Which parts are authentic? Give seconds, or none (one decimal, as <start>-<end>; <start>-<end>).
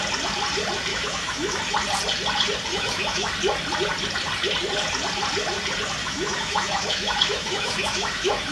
0.0-0.9; 1.6-2.7; 3.3-6.0